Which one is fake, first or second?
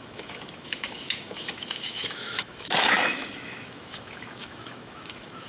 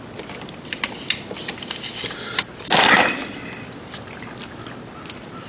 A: first